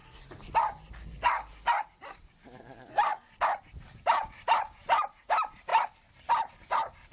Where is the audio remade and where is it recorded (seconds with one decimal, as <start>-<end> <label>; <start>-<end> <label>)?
0.0-2.6 recorded; 2.6-3.1 remade; 3.1-4.0 recorded; 4.0-5.7 remade; 5.7-6.3 recorded; 6.3-7.1 remade